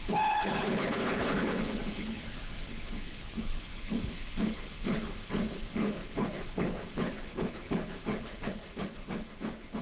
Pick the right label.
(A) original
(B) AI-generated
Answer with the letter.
B